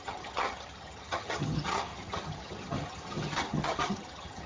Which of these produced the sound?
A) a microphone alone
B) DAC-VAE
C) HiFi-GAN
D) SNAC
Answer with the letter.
C